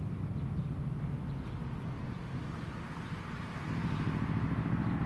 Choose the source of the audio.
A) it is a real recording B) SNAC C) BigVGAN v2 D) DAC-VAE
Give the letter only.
A